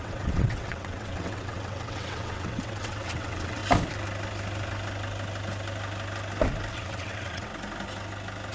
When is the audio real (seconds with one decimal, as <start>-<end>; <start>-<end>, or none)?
3.6-6.7; 7.5-8.5